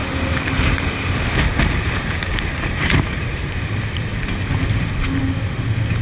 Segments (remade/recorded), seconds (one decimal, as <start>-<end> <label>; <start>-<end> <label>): 0.0-3.6 remade; 3.6-4.1 recorded; 4.1-5.2 remade; 5.2-6.0 recorded